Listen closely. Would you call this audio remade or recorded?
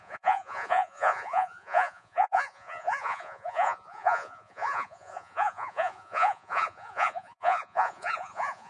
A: remade